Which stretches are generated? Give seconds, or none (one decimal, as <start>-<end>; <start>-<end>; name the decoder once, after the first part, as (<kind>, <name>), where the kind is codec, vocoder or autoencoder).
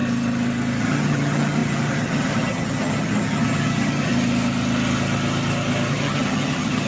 0.8-4.1 (vocoder, HiFi-GAN); 5.9-6.9